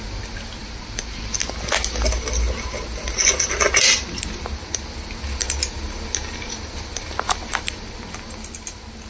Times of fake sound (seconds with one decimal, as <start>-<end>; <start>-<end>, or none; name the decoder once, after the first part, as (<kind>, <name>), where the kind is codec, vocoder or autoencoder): none